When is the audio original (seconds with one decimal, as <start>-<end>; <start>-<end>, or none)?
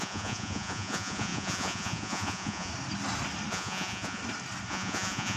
2.7-3.5; 4.2-4.7